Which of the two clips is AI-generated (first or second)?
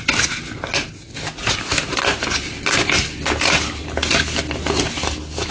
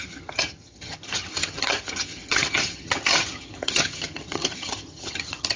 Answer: second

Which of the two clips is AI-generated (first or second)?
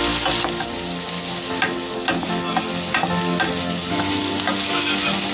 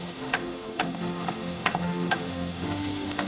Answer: second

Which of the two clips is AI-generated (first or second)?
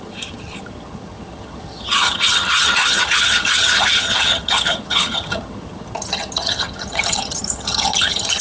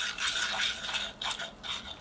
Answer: first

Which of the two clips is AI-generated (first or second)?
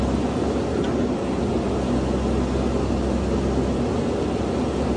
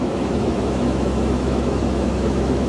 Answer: second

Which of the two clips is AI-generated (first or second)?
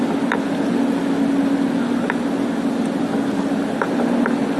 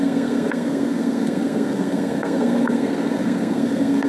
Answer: second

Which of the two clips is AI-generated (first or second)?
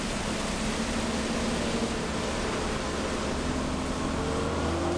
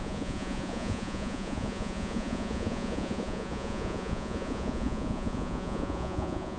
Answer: second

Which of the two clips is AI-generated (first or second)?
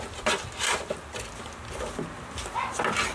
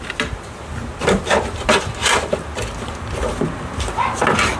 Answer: second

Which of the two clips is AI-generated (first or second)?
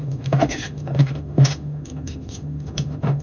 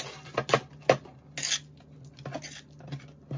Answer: first